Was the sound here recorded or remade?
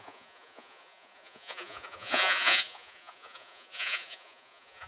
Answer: remade